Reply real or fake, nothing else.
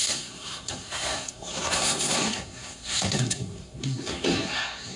fake